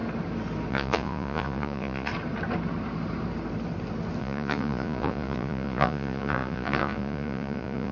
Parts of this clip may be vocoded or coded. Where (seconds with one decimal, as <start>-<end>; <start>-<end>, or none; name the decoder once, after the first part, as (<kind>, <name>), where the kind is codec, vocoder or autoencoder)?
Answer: 0.7-2.1 (vocoder, Vocos); 4.2-7.9